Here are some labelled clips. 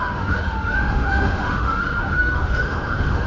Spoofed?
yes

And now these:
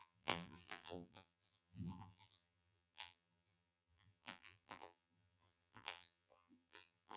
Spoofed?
yes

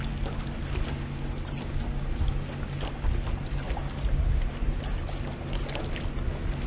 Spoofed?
no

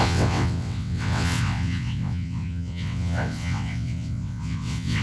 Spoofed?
yes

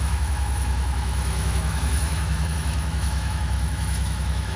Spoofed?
yes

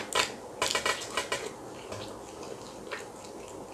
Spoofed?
no